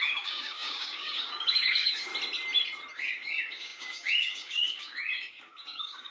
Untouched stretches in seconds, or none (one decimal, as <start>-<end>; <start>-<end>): 2.1-2.9